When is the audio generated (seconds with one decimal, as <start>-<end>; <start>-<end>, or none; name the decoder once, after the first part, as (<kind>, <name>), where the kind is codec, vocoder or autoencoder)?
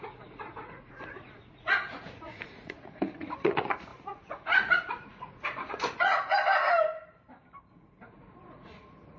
0.0-6.4 (vocoder, Vocos); 7.7-9.2